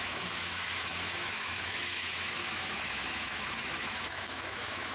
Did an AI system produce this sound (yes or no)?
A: yes